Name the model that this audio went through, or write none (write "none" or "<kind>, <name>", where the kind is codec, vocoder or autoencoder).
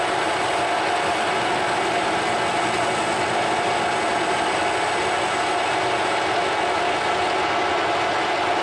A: none